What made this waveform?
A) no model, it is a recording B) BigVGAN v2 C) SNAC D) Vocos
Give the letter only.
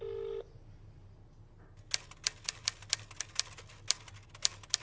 A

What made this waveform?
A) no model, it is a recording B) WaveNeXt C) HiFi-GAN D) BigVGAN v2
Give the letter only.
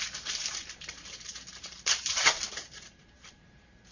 D